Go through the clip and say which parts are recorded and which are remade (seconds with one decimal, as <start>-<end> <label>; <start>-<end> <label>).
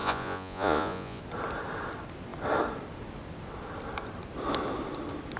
0.0-1.2 remade; 1.2-5.4 recorded